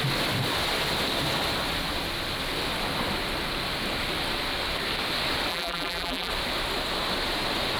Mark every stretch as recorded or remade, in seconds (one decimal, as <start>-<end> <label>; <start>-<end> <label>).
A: 0.0-5.5 recorded; 5.5-6.3 remade; 6.3-7.8 recorded